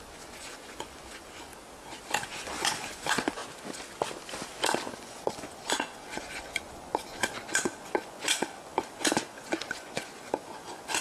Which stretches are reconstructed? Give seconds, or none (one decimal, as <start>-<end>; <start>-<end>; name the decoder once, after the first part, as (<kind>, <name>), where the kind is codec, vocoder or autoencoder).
0.0-1.5 (vocoder, Vocos); 2.2-3.4; 5.0-11.0